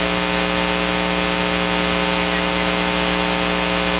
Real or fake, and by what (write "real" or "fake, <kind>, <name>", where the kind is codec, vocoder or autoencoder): real